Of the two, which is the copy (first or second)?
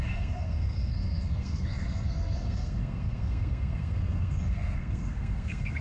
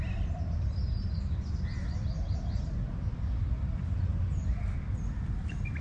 first